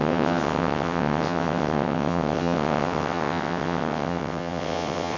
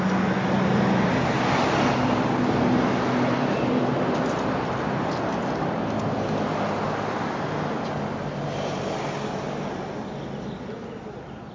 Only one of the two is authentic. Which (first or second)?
second